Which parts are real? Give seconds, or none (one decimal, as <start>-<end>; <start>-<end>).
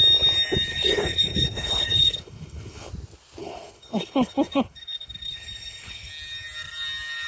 0.0-0.7; 2.9-3.4; 6.1-7.3